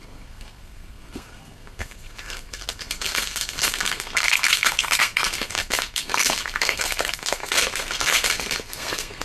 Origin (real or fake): fake